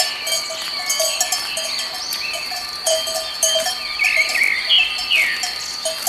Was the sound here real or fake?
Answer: real